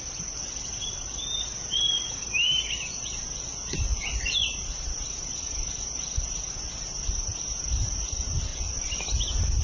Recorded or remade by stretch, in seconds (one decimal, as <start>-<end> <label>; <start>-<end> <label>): 0.0-9.6 recorded